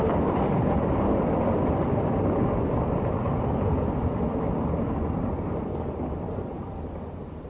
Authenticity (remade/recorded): remade